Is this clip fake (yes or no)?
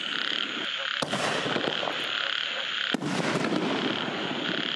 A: no